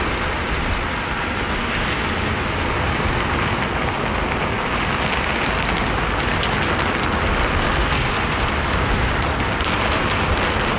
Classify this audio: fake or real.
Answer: real